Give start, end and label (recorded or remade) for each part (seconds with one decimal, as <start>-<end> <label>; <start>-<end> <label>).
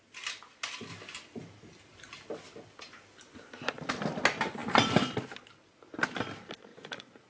0.0-6.7 recorded; 6.7-7.3 remade